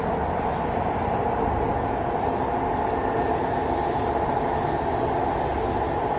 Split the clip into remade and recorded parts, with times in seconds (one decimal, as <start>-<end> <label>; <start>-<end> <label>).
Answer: 0.0-6.2 recorded